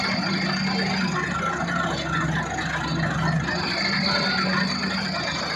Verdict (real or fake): real